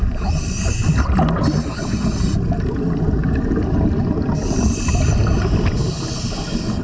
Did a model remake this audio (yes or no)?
no